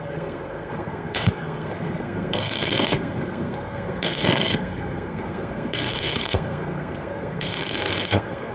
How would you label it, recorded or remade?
remade